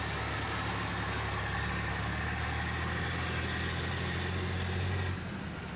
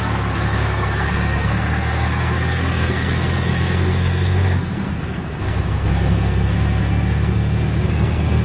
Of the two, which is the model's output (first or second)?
second